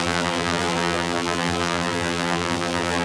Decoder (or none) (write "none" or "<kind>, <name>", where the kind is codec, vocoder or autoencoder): vocoder, BigVGAN v2